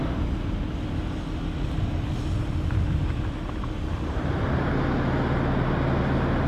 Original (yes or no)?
yes